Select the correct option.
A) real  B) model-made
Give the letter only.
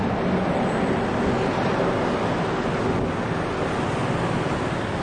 A